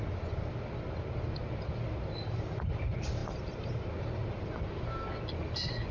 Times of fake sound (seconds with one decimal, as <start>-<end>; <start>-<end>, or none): none